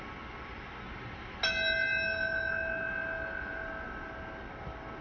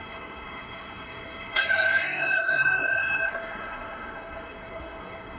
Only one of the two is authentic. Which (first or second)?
first